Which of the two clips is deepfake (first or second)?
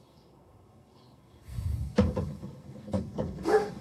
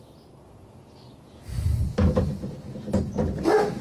first